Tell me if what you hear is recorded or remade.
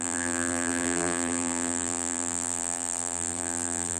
remade